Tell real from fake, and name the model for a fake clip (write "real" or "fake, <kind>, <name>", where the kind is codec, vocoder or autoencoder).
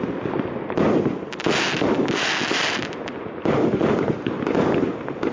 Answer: real